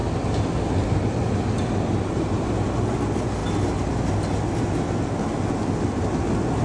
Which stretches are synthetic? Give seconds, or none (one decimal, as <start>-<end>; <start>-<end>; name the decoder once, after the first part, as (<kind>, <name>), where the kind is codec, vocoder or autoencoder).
none